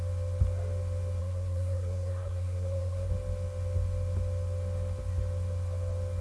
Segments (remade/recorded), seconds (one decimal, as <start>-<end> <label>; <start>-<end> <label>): 0.0-1.2 recorded; 1.2-3.1 remade; 3.1-6.2 recorded

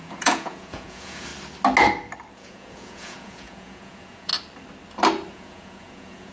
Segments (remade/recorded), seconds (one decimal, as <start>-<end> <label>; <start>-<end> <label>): 0.0-1.3 remade; 1.3-2.3 recorded; 2.3-4.3 remade; 4.3-5.3 recorded; 5.3-6.3 remade

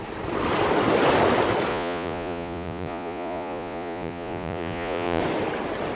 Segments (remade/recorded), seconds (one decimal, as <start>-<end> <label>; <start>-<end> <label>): 0.0-1.7 recorded; 1.7-5.2 remade; 5.2-5.9 recorded

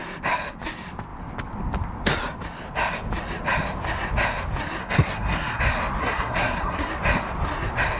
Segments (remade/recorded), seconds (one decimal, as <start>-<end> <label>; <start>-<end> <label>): 0.0-4.8 recorded; 4.8-5.6 remade; 5.6-6.0 recorded; 6.0-6.9 remade; 6.9-8.0 recorded